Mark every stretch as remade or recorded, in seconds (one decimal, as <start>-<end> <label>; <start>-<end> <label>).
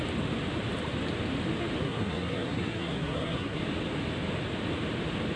0.0-1.8 recorded; 1.8-3.6 remade; 3.6-5.4 recorded